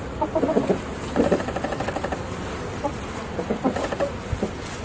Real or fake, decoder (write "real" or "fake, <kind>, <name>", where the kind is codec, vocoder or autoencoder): real